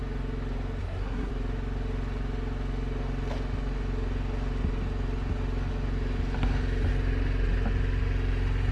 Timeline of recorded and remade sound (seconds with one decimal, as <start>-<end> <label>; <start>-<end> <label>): 0.0-0.8 recorded; 0.8-1.3 remade; 1.3-8.7 recorded